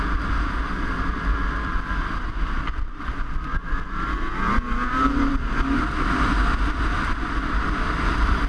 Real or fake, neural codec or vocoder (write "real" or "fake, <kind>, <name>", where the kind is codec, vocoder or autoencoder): fake, vocoder, BigVGAN v2